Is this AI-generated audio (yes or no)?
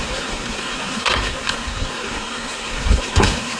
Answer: yes